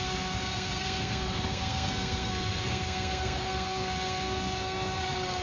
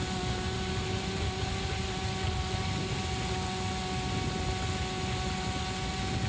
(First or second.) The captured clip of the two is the second